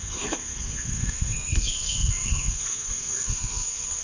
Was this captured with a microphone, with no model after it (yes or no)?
no